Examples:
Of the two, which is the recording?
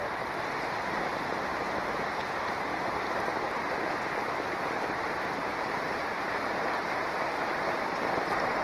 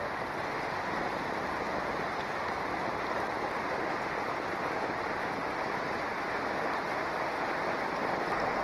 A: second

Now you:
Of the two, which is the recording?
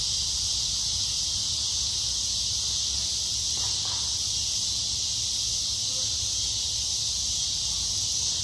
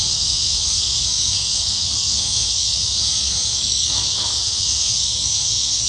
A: first